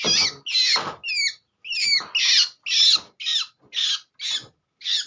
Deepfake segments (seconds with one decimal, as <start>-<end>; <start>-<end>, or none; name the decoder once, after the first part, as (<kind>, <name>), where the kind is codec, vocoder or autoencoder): none